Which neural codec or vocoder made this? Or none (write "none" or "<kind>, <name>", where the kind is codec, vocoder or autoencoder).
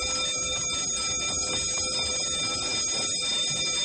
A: none